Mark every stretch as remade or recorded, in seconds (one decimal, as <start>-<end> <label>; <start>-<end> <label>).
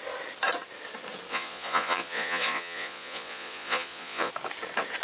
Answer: 0.0-1.3 recorded; 1.3-4.3 remade; 4.3-5.0 recorded